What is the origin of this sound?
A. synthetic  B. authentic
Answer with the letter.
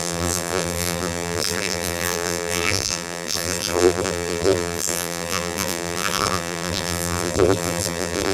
A